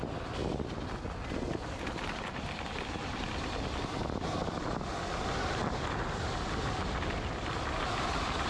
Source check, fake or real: real